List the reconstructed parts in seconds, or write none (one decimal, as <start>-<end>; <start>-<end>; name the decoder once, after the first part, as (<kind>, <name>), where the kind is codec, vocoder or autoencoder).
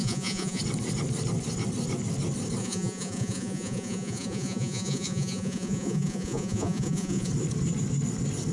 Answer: 0.0-0.6 (vocoder, Vocos); 2.6-7.3